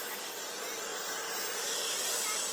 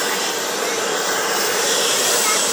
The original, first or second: first